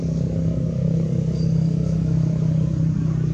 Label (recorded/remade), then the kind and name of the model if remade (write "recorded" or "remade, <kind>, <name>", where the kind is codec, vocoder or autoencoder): remade, codec, DAC